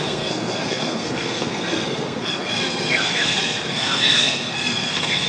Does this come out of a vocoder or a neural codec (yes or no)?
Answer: yes